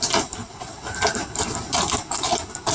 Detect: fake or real real